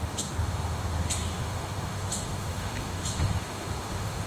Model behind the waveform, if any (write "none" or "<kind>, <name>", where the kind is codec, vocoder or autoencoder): autoencoder, DAC-VAE